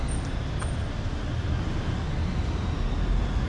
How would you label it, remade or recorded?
recorded